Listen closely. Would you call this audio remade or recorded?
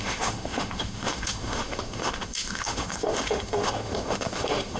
remade